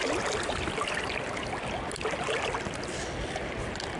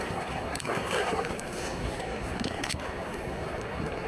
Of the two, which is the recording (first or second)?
first